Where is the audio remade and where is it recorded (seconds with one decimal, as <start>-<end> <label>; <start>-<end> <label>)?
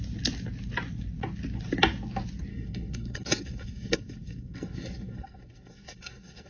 0.0-2.5 recorded; 2.5-6.5 remade